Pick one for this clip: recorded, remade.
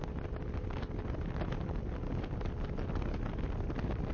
recorded